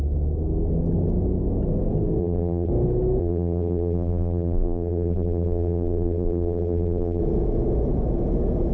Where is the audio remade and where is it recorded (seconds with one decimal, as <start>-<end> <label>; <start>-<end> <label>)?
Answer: 0.0-2.2 recorded; 2.2-2.7 remade; 2.7-3.2 recorded; 3.2-7.2 remade; 7.2-8.7 recorded